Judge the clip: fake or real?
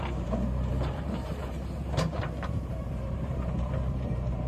fake